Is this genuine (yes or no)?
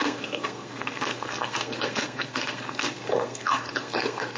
no